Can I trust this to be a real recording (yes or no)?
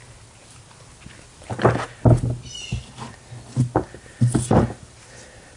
yes